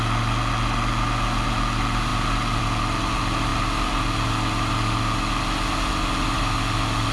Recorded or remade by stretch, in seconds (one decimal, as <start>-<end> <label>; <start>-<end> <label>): 0.0-7.1 recorded